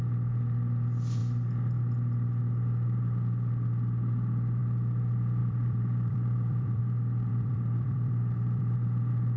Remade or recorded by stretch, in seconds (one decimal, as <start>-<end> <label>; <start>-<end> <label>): 0.0-5.4 recorded; 5.4-6.8 remade; 6.8-7.3 recorded; 7.3-9.4 remade